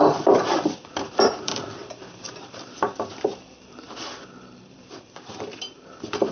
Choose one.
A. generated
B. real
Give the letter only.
A